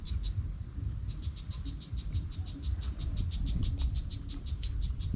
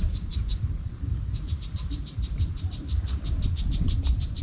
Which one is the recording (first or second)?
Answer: first